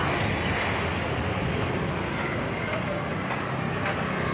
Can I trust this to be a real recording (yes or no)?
yes